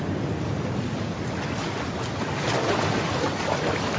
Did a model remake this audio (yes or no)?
no